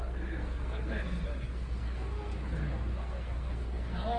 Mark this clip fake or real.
fake